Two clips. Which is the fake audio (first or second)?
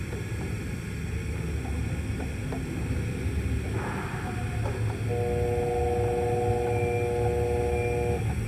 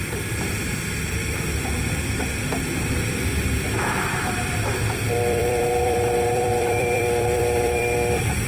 second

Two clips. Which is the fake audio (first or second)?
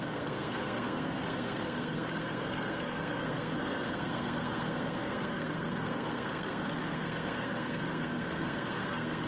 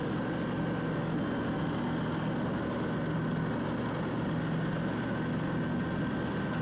first